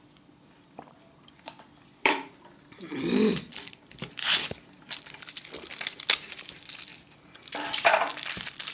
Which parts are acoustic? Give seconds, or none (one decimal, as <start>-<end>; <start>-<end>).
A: 6.9-7.7